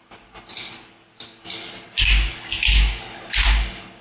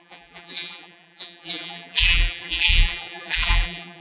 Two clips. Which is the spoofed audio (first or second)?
second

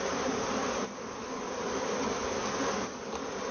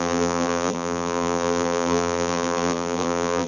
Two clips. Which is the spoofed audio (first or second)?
second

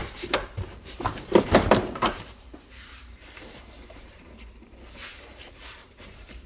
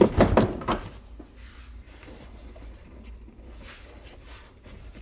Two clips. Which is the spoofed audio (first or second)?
first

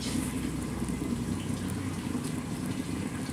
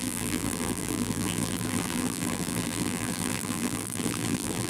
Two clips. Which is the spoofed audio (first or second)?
second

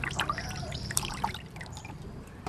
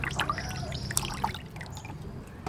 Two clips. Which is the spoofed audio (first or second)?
first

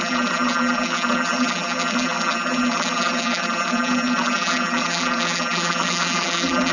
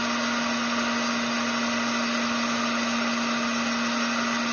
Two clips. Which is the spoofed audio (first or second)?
first